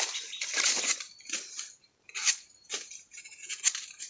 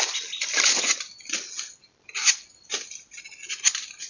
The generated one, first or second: first